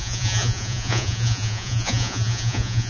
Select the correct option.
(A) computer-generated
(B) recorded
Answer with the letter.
A